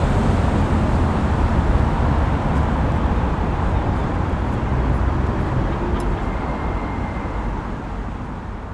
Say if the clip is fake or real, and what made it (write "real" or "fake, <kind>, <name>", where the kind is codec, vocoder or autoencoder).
real